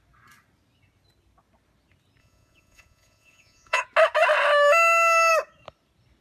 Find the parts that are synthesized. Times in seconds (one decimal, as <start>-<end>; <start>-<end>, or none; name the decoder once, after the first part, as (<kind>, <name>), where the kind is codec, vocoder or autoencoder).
2.2-3.8 (vocoder, Vocos)